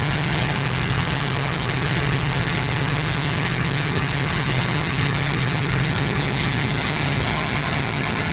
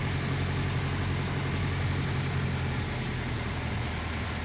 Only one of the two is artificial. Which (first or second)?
first